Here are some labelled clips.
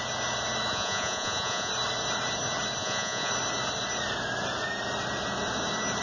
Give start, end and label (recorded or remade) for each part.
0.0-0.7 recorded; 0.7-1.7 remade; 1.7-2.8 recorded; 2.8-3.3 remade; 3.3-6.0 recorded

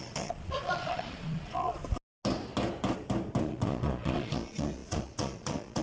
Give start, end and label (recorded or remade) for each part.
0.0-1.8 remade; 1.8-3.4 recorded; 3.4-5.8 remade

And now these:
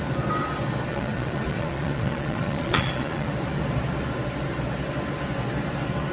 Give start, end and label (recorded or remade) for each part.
0.0-0.9 recorded; 0.9-3.3 remade; 3.3-6.1 recorded

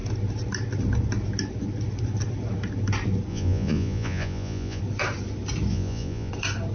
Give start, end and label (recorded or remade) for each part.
0.0-3.3 recorded; 3.3-4.8 remade; 4.8-5.7 recorded; 5.7-6.3 remade; 6.3-6.7 recorded

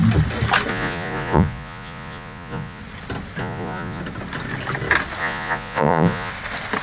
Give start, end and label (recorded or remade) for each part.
0.0-0.7 recorded; 0.7-2.8 remade; 2.8-3.4 recorded; 3.4-4.0 remade; 4.0-5.2 recorded; 5.2-6.3 remade; 6.3-6.8 recorded

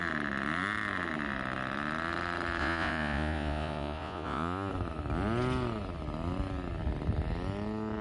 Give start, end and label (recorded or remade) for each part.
0.0-2.6 recorded; 2.6-4.7 remade; 4.7-8.0 recorded

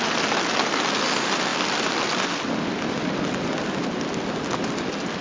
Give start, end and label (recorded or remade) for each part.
0.0-5.2 recorded